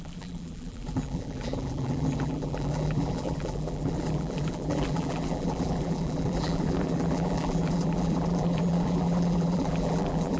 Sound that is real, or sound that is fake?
fake